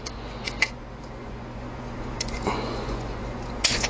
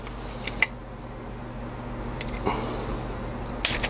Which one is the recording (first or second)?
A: second